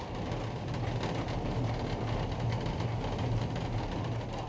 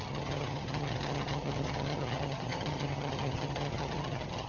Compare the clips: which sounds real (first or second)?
first